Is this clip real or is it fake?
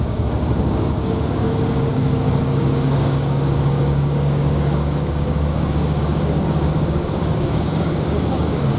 fake